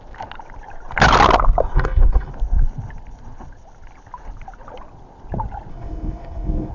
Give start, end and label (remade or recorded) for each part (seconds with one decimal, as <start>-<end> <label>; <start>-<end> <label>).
0.0-1.6 recorded; 1.6-2.3 remade; 2.3-5.7 recorded; 5.7-6.7 remade